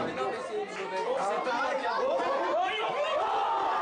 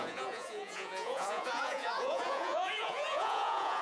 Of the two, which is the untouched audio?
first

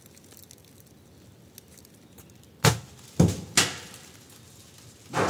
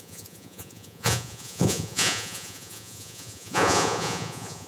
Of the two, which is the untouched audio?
first